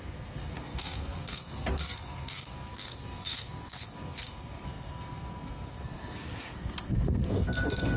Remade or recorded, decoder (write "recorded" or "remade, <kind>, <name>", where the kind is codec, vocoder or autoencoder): remade, codec, SNAC